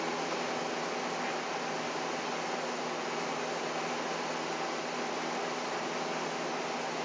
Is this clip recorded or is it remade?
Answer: recorded